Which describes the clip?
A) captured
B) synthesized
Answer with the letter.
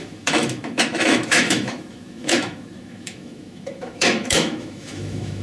B